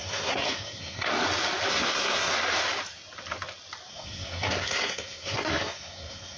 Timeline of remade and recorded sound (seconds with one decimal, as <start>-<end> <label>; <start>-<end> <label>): 0.0-1.1 remade; 1.1-1.7 recorded; 1.7-2.3 remade; 2.3-3.9 recorded; 3.9-6.4 remade